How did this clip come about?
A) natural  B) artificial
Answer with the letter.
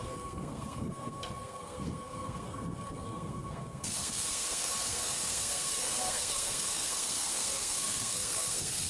B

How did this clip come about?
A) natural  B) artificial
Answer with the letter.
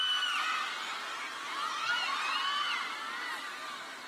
A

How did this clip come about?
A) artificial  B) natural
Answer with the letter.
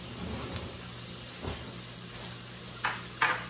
B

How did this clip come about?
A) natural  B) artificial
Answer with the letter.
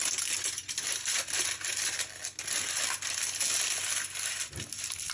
A